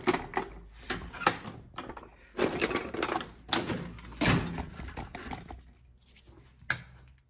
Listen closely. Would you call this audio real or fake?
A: real